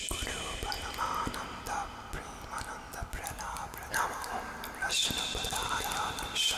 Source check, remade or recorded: recorded